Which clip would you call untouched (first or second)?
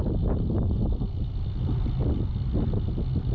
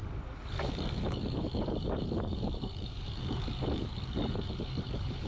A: first